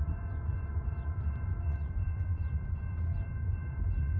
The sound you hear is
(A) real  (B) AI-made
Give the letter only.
B